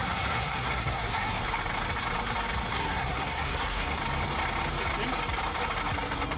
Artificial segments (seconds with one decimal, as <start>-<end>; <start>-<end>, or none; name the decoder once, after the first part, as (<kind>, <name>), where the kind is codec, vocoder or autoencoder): 0.0-1.4 (codec, SNAC); 2.7-4.0